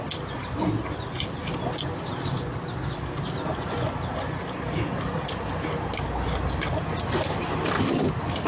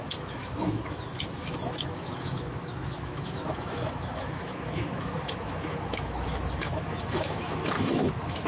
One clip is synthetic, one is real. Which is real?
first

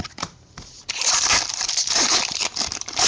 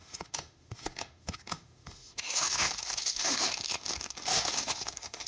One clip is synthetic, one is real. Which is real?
first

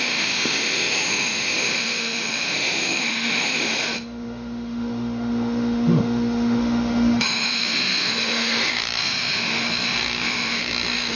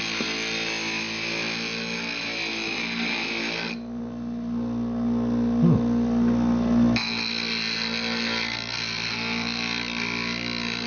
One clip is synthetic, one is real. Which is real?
second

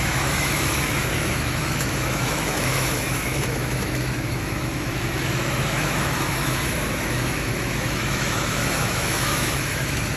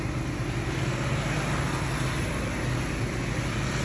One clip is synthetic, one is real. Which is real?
second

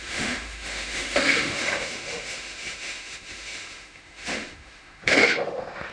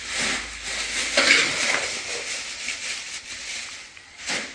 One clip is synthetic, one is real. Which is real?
second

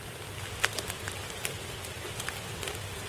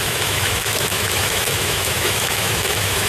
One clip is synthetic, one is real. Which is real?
first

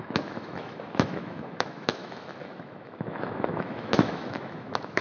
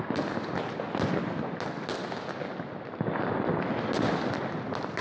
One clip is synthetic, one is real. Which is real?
second